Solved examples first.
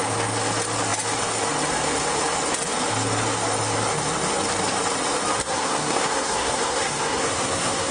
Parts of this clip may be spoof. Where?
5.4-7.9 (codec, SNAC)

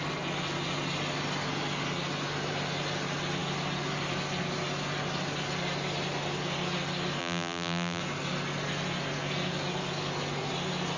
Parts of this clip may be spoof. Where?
7.2-8.0 (vocoder, BigVGAN v2)

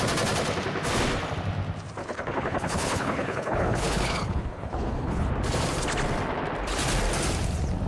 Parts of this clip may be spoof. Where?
2.0-5.3 (codec, HILCodec)

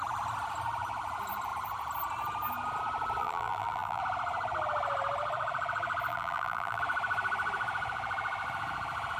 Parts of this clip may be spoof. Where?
3.2-4.0 (vocoder, BigVGAN v2); 6.1-6.8

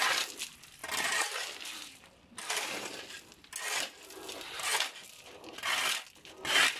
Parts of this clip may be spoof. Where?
none

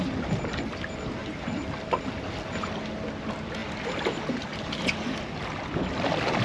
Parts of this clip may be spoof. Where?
none

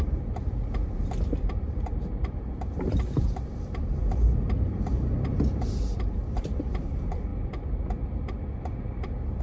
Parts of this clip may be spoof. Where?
0.0-7.3 (vocoder, BigVGAN v2)